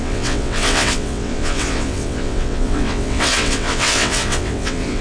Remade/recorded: remade